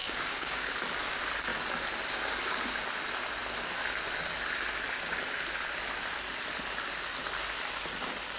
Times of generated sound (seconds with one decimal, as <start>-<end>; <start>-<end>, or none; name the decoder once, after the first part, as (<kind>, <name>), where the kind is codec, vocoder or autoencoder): 0.0-0.7 (codec, DAC)